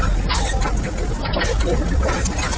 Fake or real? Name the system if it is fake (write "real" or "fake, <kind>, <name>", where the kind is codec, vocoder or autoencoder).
real